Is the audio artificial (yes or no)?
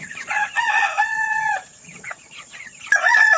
yes